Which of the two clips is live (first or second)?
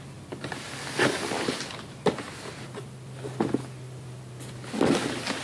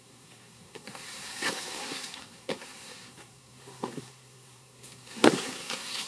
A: first